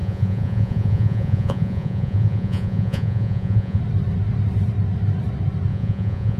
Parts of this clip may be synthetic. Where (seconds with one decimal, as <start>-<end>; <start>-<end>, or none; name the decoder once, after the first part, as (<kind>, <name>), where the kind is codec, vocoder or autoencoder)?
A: 0.0-3.8 (vocoder, Vocos); 5.7-6.4